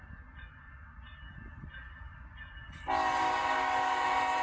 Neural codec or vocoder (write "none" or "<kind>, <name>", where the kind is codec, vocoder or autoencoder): none